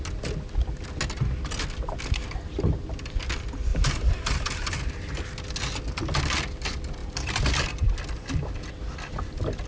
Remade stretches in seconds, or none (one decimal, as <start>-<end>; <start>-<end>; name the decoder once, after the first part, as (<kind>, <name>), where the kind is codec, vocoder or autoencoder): 3.7-4.8 (vocoder, BigVGAN v2); 7.0-7.7